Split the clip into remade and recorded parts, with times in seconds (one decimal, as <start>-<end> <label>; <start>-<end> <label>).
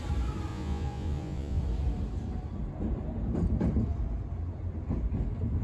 0.0-0.5 recorded; 0.5-1.6 remade; 1.6-5.6 recorded